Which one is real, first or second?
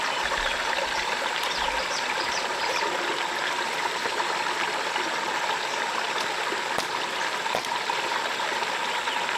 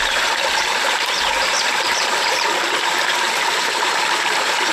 first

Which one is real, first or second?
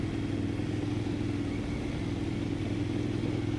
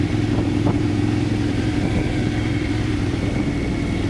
first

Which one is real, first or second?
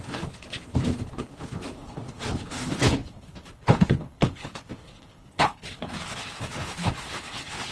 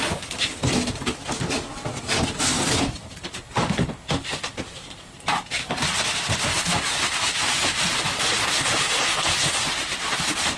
second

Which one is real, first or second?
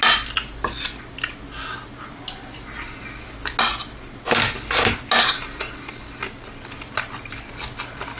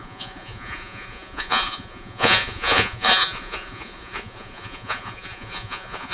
first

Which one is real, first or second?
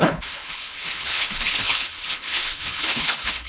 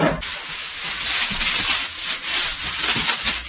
second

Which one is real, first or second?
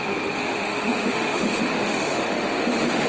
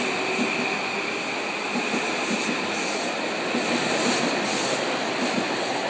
second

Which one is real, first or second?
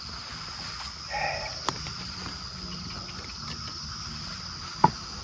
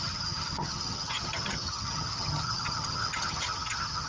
first